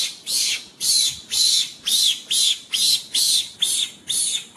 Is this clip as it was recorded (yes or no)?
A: yes